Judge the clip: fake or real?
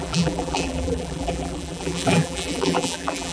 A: fake